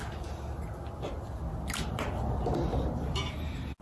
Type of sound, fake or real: real